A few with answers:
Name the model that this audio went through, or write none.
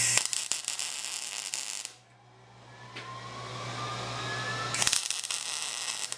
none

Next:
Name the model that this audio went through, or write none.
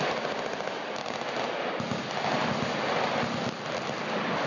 none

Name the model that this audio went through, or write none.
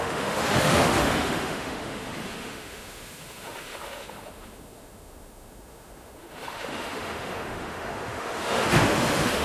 autoencoder, DAC-VAE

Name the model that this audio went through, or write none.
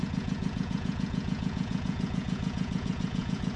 vocoder, Vocos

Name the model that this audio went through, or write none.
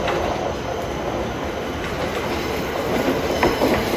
none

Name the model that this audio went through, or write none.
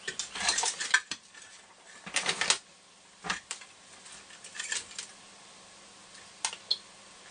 none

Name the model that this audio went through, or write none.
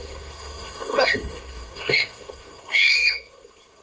codec, SNAC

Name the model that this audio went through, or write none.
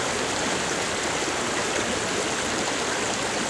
none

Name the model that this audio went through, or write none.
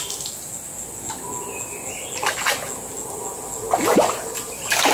none